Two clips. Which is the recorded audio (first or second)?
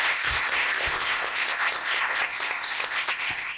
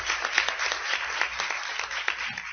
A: second